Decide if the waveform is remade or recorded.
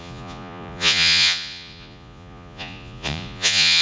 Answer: remade